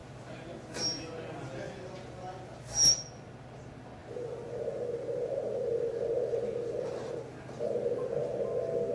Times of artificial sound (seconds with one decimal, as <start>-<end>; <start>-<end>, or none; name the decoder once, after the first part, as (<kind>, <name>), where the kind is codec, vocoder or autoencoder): none